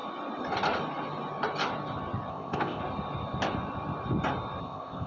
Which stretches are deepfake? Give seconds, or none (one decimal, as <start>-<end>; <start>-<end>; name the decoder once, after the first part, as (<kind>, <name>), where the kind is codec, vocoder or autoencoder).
2.3-2.8 (codec, ZipCodec); 4.6-5.1